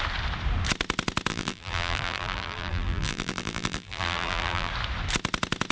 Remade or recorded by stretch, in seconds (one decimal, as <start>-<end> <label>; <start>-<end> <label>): 0.0-1.3 recorded; 1.3-4.7 remade; 4.7-5.7 recorded